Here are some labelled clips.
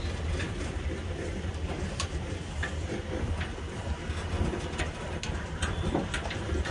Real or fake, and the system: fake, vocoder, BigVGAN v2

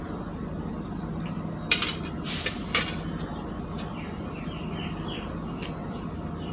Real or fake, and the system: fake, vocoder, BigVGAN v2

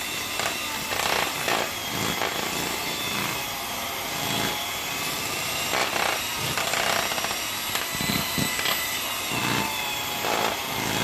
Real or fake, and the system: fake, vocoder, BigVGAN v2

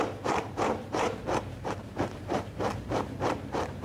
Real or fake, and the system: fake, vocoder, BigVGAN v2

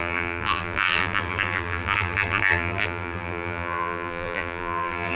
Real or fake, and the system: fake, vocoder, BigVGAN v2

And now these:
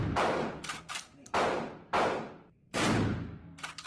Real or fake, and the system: fake, vocoder, BigVGAN v2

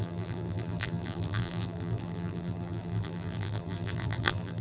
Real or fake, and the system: fake, vocoder, BigVGAN v2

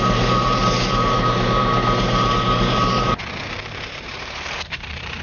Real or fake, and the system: fake, vocoder, BigVGAN v2